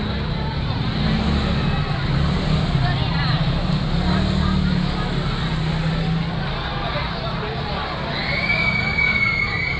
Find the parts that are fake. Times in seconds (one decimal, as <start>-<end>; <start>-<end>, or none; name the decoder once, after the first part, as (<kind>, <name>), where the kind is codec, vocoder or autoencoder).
none